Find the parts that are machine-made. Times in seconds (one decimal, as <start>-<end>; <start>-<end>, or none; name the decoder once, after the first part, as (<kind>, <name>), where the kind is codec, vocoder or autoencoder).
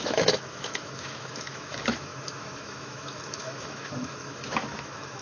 0.0-5.2 (autoencoder, DAC-VAE)